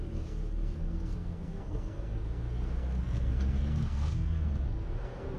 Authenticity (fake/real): fake